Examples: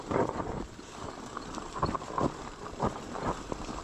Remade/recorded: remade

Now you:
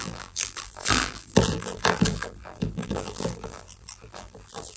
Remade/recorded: remade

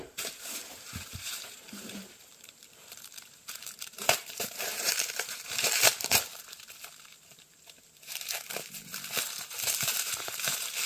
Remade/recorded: remade